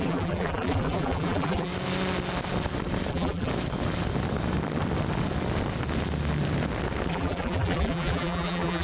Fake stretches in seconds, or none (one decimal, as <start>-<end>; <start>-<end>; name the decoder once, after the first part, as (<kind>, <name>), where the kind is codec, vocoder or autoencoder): 0.0-1.7 (vocoder, BigVGAN v2); 3.1-3.5; 7.1-8.8